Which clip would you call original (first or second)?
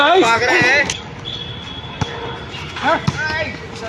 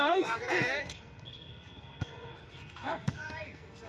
first